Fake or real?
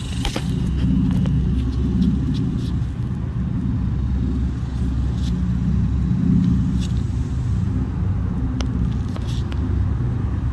real